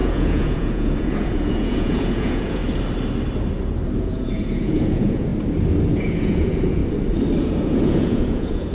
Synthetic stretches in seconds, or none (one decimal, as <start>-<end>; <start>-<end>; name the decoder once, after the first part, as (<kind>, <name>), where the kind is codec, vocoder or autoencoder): 0.0-2.6 (vocoder, Vocos); 4.0-5.3; 5.9-6.8; 7.4-8.7